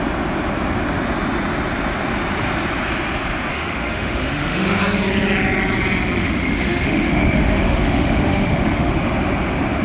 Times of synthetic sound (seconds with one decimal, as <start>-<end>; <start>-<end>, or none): 3.5-4.8; 6.2-8.9